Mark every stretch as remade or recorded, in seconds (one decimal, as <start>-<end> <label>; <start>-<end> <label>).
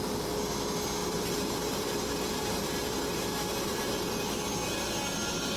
0.0-1.0 recorded; 1.0-4.4 remade; 4.4-5.6 recorded